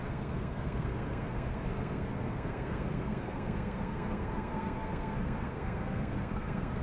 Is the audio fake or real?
fake